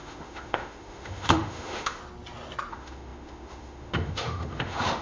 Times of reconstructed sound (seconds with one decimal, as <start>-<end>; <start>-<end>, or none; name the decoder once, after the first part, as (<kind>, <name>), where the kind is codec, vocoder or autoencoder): 0.0-2.0 (autoencoder, DAC-VAE); 2.7-5.0